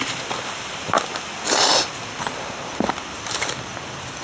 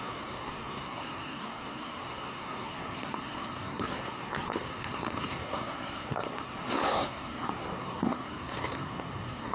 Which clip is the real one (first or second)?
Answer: first